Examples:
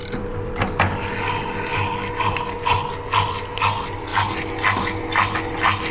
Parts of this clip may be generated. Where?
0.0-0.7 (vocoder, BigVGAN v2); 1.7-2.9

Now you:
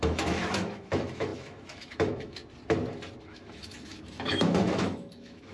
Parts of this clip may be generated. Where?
0.0-2.4 (autoencoder, DAC-VAE); 3.2-5.5

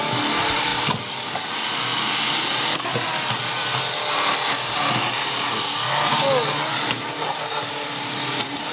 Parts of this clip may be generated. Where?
none